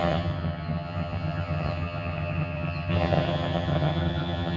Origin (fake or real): fake